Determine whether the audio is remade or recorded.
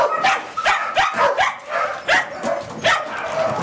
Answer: recorded